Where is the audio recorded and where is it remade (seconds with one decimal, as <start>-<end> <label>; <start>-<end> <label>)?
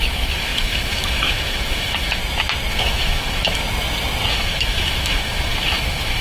0.0-2.2 remade; 2.2-2.7 recorded; 2.7-3.6 remade; 3.6-4.3 recorded; 4.3-6.2 remade